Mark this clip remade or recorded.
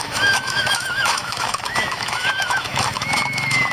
remade